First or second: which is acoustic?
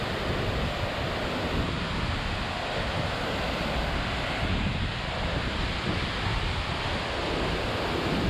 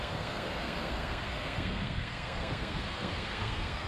first